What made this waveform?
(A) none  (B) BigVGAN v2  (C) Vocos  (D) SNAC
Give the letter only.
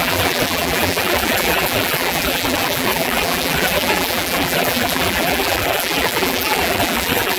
B